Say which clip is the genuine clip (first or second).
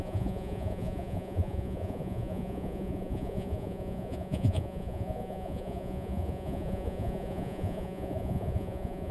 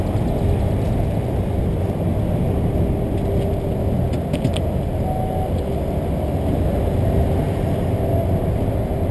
second